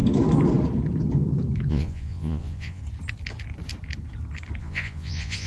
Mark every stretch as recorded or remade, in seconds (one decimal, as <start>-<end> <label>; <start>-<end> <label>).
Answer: 0.0-1.7 recorded; 1.7-2.8 remade; 2.8-4.6 recorded; 4.6-5.5 remade

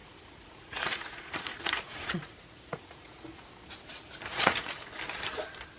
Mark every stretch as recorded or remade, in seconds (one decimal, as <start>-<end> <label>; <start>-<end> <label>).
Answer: 0.0-3.5 remade; 3.5-4.3 recorded; 4.3-5.0 remade; 5.0-5.8 recorded

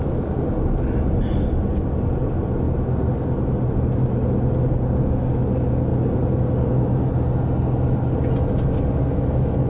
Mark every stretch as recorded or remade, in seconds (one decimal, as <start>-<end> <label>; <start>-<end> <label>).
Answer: 0.0-9.7 recorded